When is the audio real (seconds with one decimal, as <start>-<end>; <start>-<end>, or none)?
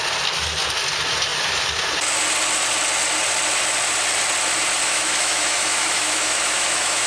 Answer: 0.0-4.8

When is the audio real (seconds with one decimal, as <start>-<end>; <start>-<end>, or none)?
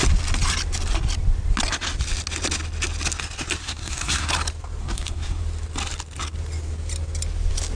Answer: 0.0-3.6; 4.3-4.8; 5.4-7.7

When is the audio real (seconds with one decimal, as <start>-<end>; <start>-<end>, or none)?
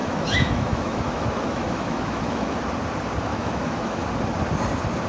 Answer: 2.6-3.3; 4.0-5.1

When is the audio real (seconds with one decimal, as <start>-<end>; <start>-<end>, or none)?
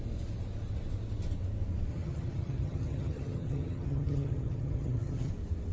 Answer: 0.0-1.9; 5.3-5.7